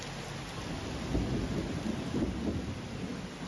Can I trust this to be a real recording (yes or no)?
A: yes